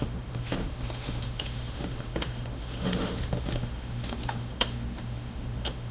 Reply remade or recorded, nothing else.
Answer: remade